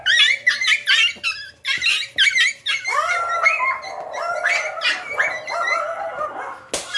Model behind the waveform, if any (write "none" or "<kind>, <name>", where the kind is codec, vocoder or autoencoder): none